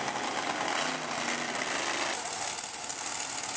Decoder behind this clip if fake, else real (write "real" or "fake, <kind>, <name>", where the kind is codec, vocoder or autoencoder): real